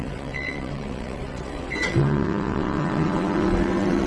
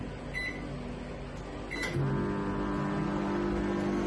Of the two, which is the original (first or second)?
second